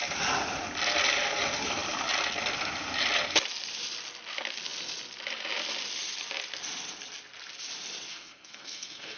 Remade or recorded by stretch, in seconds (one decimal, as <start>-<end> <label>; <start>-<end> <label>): 0.0-8.1 recorded; 8.1-9.2 remade

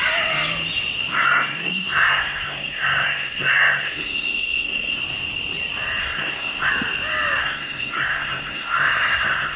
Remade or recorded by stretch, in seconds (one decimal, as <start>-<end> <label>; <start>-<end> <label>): 0.0-1.1 recorded; 1.1-5.0 remade; 5.0-6.0 recorded; 6.0-6.7 remade; 6.7-7.4 recorded; 7.4-9.6 remade

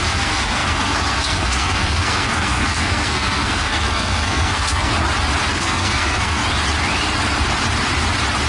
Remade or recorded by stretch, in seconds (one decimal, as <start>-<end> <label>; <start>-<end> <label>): 0.0-4.9 remade; 4.9-5.5 recorded; 5.5-6.4 remade; 6.4-8.5 recorded

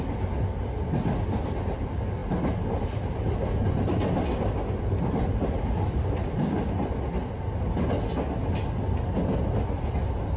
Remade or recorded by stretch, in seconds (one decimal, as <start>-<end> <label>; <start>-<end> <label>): 0.0-10.4 recorded

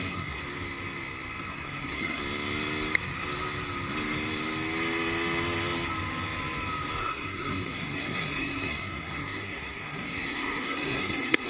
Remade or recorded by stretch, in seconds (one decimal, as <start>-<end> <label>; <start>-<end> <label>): 0.0-0.4 remade; 0.4-1.5 recorded; 1.5-2.2 remade; 2.2-7.0 recorded; 7.0-11.5 remade

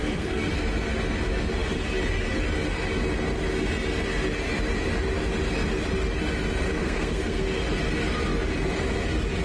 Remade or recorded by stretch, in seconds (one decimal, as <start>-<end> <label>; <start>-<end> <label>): 0.0-0.5 remade; 0.5-6.8 recorded; 6.8-7.4 remade; 7.4-9.4 recorded